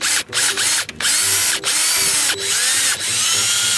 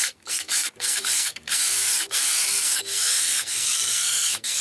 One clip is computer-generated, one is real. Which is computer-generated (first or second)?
second